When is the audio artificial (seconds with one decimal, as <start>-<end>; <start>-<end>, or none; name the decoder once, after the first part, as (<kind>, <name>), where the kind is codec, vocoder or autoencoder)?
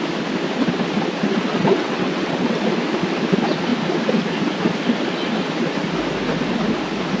1.5-2.6 (vocoder, WaveNeXt)